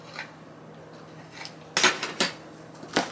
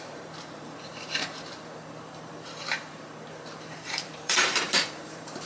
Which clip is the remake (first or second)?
second